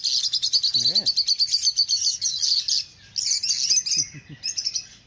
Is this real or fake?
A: real